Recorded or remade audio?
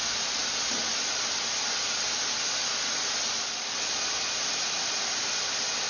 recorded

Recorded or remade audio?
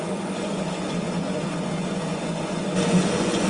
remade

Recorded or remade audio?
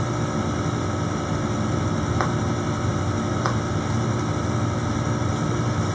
recorded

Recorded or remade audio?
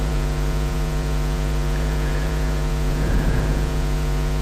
remade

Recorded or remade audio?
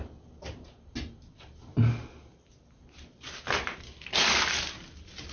recorded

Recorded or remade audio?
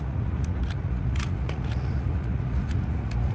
remade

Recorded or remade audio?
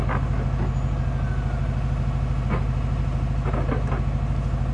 recorded